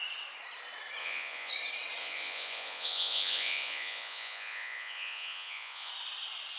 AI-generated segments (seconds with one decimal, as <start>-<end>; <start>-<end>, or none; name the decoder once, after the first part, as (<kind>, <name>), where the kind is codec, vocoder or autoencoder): 1.0-1.5 (vocoder, Vocos); 2.0-5.9